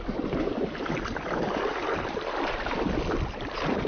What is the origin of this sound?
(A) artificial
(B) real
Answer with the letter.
B